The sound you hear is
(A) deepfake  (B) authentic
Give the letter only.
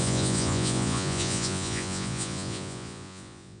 A